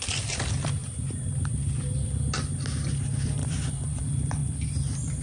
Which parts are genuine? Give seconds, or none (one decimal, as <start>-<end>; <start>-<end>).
0.0-0.8; 1.7-3.4; 4.0-5.2